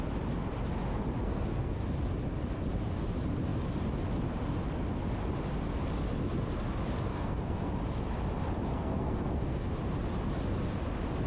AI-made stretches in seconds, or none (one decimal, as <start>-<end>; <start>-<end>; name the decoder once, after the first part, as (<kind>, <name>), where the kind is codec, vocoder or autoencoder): 1.2-1.8 (codec, SNAC); 7.1-7.7; 8.7-9.7